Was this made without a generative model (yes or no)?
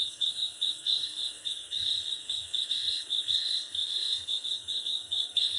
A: no